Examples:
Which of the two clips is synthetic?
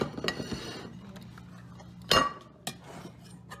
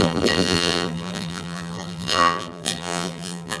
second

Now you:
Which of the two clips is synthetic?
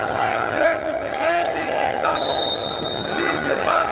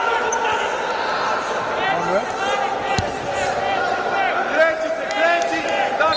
first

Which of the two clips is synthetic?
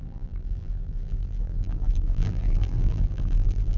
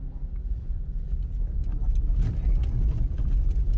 first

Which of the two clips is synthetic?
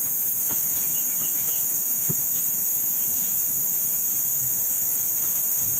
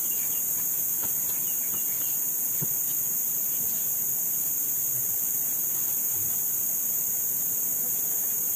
first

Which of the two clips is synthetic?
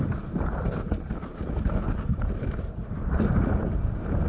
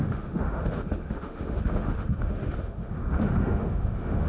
second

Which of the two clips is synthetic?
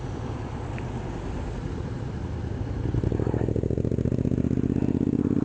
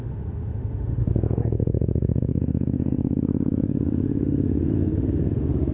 second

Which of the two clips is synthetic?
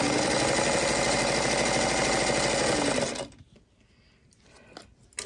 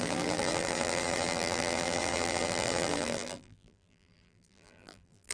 second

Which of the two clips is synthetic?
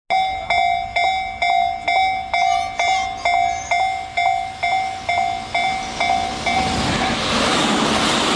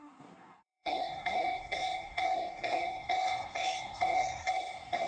second